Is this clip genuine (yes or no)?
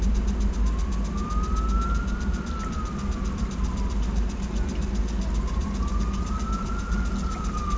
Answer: yes